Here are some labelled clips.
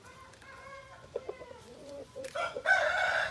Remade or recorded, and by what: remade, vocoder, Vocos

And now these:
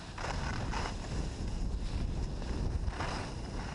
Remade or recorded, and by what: recorded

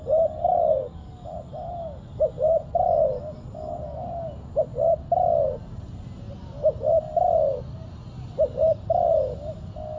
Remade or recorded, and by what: recorded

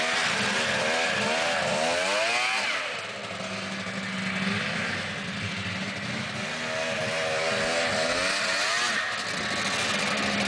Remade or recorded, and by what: recorded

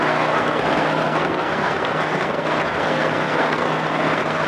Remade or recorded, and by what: remade, codec, SNAC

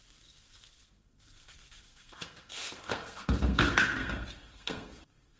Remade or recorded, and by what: remade, codec, SNAC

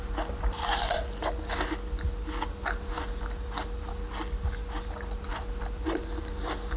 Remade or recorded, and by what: recorded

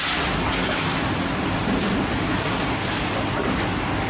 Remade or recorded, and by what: recorded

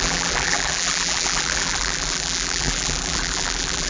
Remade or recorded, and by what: remade, vocoder, BigVGAN v2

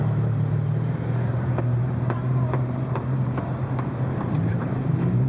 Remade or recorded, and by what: remade, vocoder, BigVGAN v2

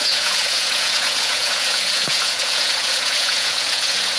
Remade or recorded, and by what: remade, vocoder, Vocos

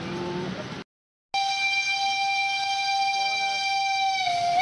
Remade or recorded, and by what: recorded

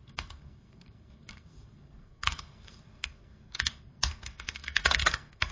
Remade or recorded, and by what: remade, codec, SNAC